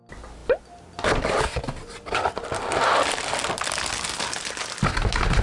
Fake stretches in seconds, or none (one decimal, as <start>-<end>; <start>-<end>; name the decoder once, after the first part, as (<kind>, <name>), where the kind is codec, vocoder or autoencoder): none

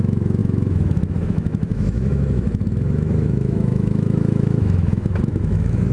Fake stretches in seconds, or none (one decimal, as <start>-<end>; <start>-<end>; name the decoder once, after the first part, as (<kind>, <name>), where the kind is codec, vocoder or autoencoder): 0.0-5.9 (autoencoder, DAC-VAE)

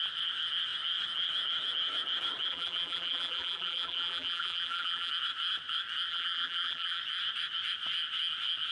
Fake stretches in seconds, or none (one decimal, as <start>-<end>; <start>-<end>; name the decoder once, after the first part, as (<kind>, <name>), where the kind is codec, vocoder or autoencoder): 2.5-5.1 (vocoder, BigVGAN v2); 6.1-7.0

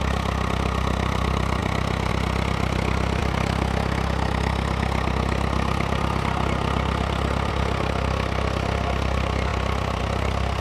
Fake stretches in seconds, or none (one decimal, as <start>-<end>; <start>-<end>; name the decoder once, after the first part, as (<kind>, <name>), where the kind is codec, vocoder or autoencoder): none

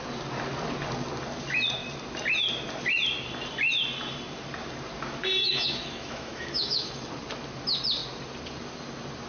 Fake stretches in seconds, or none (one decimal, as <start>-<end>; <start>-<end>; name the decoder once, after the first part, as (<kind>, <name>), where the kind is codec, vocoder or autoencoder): 5.4-7.0 (autoencoder, DAC-VAE)

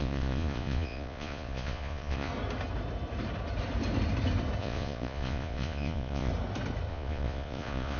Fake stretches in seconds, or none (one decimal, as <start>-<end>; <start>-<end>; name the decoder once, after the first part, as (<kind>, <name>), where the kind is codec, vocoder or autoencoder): 0.0-2.3 (vocoder, Vocos); 4.6-6.3; 6.9-8.0

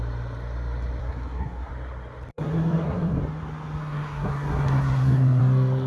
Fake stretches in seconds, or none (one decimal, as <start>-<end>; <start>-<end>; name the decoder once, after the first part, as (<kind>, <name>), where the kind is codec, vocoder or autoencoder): 1.0-1.7 (codec, SNAC); 2.3-3.2; 3.8-5.4